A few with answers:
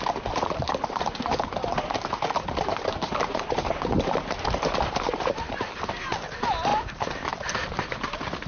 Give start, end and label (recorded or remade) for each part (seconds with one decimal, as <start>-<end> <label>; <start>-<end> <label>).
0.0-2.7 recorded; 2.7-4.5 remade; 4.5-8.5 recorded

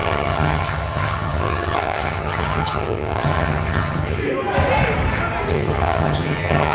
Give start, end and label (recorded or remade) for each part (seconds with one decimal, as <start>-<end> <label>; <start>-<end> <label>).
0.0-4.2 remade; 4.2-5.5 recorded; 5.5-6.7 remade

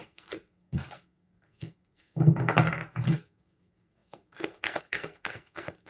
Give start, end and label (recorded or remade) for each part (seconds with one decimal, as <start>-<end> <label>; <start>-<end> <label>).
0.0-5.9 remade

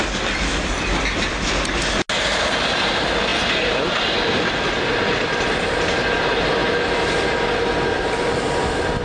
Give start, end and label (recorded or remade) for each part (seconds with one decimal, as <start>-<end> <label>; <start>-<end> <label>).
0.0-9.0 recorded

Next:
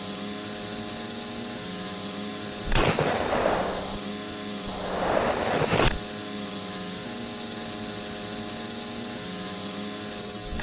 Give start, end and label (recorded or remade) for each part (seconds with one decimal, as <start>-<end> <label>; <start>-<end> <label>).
0.0-2.3 recorded; 2.3-4.1 remade; 4.1-10.6 recorded

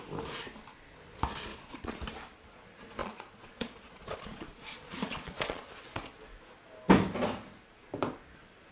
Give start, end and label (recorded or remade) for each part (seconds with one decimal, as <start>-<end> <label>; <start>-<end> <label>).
0.0-1.5 recorded; 1.5-2.0 remade; 2.0-3.0 recorded; 3.0-5.7 remade; 5.7-8.7 recorded